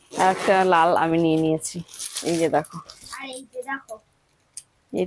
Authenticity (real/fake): real